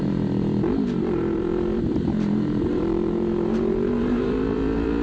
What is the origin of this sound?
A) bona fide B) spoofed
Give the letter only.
B